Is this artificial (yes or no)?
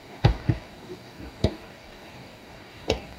yes